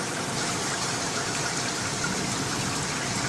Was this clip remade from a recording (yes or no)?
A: no